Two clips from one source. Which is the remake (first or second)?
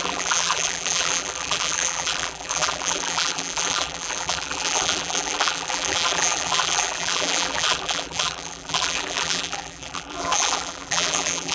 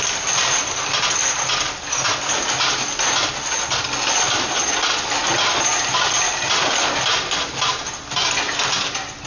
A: first